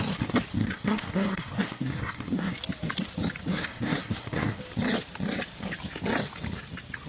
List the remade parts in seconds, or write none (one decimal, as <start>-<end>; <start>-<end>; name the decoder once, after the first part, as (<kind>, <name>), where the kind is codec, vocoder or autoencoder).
0.6-2.5 (codec, SNAC); 3.4-4.6